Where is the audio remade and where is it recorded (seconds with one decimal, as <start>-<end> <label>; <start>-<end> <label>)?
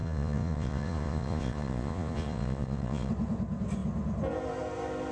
0.0-3.1 remade; 3.1-5.1 recorded